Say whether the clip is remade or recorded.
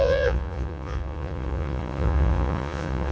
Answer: remade